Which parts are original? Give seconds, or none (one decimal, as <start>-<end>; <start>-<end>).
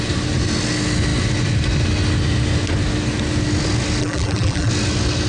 0.0-4.0; 4.7-5.3